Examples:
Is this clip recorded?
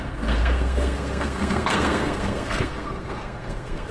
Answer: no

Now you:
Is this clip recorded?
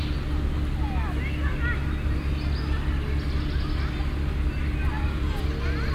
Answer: yes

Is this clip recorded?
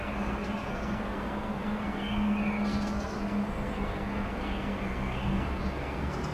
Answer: no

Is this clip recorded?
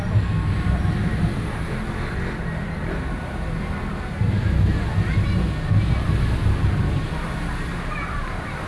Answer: yes